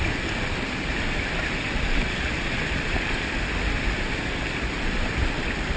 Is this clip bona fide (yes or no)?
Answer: yes